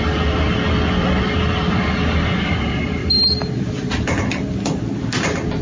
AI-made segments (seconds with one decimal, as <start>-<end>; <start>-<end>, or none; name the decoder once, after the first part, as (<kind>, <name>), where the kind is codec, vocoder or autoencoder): none